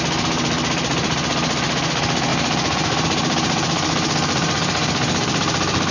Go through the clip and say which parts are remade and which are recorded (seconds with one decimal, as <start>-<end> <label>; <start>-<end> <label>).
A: 0.0-2.3 recorded; 2.3-5.9 remade